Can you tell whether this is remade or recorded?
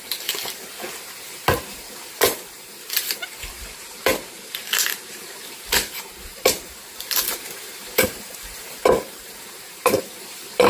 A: remade